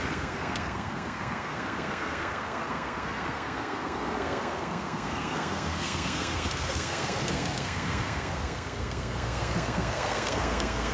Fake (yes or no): yes